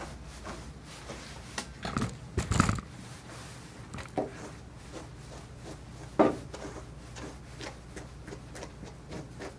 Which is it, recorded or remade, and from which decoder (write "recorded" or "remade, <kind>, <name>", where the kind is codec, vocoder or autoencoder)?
recorded